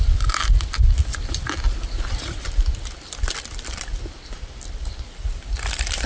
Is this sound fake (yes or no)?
yes